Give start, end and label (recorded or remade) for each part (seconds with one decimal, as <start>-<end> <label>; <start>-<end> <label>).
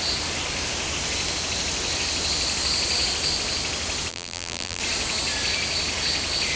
0.0-4.1 recorded; 4.1-4.8 remade; 4.8-6.6 recorded